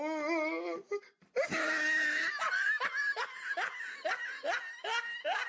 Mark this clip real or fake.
real